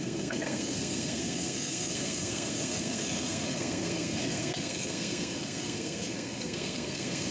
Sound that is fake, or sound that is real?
fake